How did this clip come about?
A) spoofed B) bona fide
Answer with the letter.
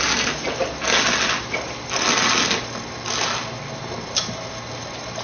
B